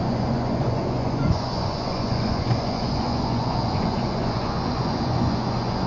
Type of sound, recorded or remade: remade